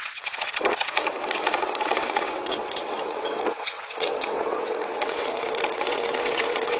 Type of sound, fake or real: fake